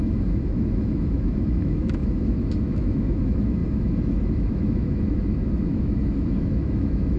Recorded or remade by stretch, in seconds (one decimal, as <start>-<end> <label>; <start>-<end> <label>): 0.0-7.2 remade